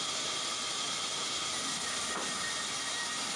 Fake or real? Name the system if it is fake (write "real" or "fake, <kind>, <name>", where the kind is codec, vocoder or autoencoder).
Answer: real